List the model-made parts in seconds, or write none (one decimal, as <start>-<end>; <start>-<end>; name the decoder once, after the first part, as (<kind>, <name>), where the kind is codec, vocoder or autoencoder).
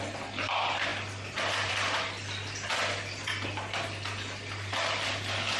none